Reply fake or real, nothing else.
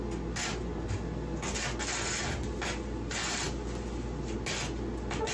real